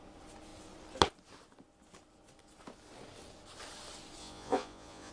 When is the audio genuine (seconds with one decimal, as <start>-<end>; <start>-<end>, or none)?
0.0-4.2